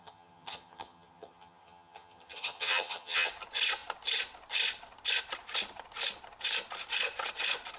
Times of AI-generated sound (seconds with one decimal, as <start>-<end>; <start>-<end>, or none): 0.0-3.3